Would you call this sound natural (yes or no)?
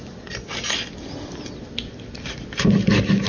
yes